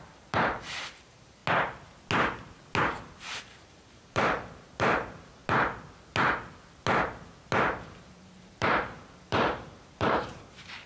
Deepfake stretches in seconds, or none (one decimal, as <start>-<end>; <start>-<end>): 0.0-1.4; 2.8-5.4; 8.1-10.9